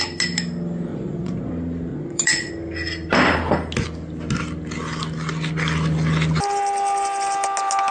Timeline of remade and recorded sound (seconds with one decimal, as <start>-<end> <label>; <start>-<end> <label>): 0.0-0.9 recorded; 0.9-1.5 remade; 1.5-1.9 recorded; 1.9-2.5 remade; 2.5-7.9 recorded